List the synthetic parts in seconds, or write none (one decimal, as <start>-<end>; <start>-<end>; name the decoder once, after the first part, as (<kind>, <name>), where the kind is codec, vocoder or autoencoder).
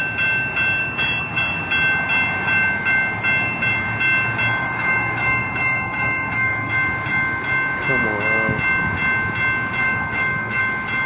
0.8-1.6 (codec, DAC); 4.6-6.7; 9.8-10.6